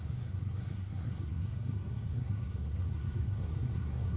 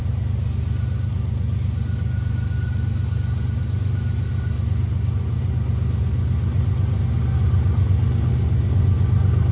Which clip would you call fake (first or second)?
first